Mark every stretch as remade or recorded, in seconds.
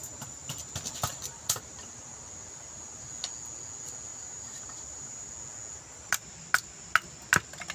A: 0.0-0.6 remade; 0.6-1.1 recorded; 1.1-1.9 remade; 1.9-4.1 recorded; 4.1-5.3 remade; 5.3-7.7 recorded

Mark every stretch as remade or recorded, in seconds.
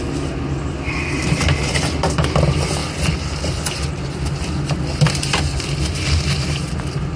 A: 0.0-2.8 remade; 2.8-5.1 recorded; 5.1-7.2 remade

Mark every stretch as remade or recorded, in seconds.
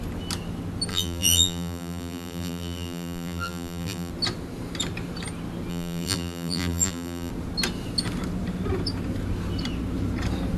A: 0.0-0.9 recorded; 0.9-4.1 remade; 4.1-5.7 recorded; 5.7-7.3 remade; 7.3-10.6 recorded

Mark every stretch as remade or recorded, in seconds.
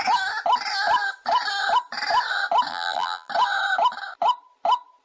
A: 0.0-2.7 recorded; 2.7-3.3 remade; 3.3-5.0 recorded